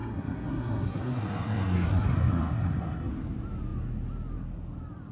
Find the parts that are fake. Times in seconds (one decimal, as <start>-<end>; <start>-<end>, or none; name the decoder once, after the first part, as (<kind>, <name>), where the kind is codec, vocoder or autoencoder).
0.0-3.1 (codec, SNAC)